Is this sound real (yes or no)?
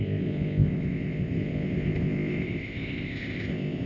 no